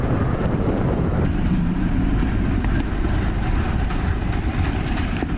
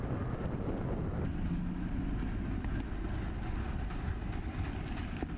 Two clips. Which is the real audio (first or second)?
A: second